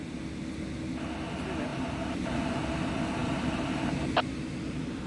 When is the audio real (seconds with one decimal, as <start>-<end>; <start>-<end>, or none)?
0.0-1.7; 2.4-3.2; 3.9-5.1